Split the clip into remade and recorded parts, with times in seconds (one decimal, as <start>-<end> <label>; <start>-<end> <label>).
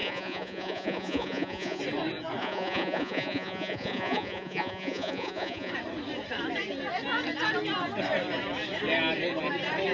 0.0-1.8 remade; 1.8-2.4 recorded; 2.4-5.7 remade; 5.7-9.9 recorded